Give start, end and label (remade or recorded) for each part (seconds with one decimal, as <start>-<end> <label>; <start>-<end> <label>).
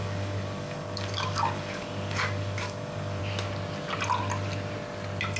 0.0-3.2 remade; 3.2-5.4 recorded